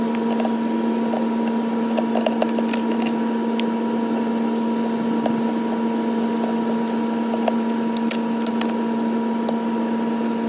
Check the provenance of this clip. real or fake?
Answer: real